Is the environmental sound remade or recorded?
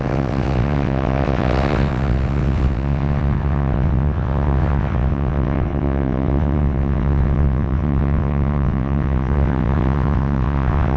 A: remade